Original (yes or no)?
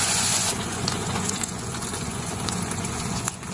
no